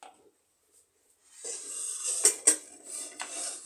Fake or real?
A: real